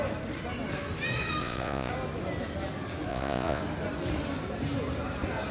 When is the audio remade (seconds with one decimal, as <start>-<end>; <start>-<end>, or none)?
1.4-1.9; 3.1-3.6